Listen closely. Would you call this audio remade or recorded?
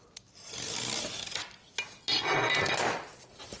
recorded